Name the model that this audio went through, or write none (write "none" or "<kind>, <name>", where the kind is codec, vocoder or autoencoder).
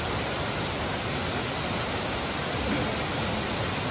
none